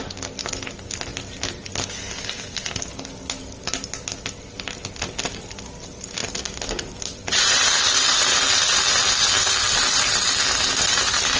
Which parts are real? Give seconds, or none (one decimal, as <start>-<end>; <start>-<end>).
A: 0.0-11.4